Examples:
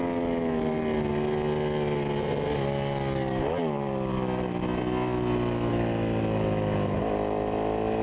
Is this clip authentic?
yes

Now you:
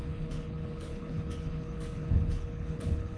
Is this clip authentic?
no